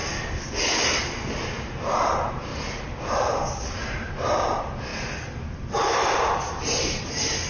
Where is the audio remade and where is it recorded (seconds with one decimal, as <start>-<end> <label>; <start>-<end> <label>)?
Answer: 0.0-7.5 recorded

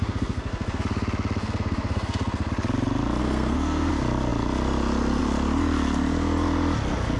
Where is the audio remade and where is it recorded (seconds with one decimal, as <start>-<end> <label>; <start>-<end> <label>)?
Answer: 0.0-0.8 remade; 0.8-1.4 recorded; 1.4-2.5 remade; 2.5-3.2 recorded; 3.2-3.9 remade; 3.9-7.2 recorded

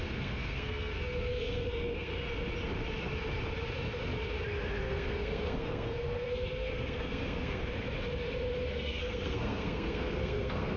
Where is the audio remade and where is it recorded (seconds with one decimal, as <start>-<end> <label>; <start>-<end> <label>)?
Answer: 0.0-2.1 remade; 2.1-4.8 recorded; 4.8-7.6 remade; 7.6-8.7 recorded; 8.7-10.8 remade

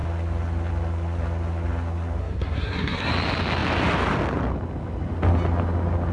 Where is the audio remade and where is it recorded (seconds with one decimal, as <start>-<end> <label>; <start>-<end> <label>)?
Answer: 0.0-2.2 recorded; 2.2-3.1 remade; 3.1-6.1 recorded

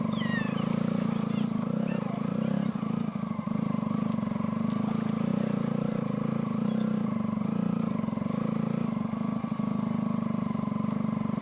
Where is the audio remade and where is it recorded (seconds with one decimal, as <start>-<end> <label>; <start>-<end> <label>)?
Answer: 0.0-11.4 recorded

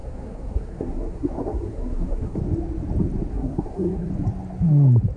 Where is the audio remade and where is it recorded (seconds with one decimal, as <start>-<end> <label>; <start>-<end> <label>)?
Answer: 0.0-2.4 remade; 2.4-3.3 recorded; 3.3-4.1 remade; 4.1-5.2 recorded

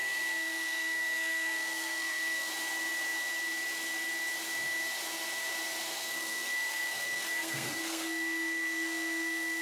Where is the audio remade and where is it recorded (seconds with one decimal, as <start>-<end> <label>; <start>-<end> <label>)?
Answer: 0.0-2.5 remade; 2.5-5.9 recorded; 5.9-9.6 remade

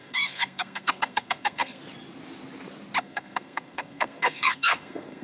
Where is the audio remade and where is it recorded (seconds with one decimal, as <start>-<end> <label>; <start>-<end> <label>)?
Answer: 0.0-1.8 remade; 1.8-3.0 recorded; 3.0-5.2 remade